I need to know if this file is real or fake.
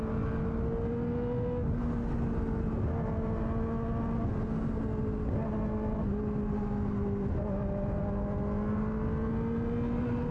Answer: real